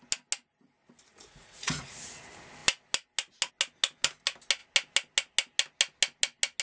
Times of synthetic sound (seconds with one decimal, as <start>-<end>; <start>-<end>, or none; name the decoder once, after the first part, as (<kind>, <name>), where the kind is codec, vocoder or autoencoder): 1.1-2.2 (vocoder, Vocos)